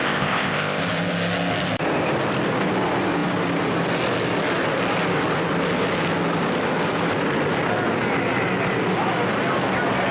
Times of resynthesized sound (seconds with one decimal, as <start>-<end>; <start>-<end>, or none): 0.0-0.8